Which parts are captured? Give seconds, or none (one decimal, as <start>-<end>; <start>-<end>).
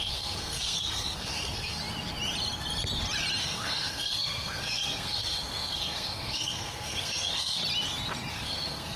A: 1.8-3.4; 7.6-8.3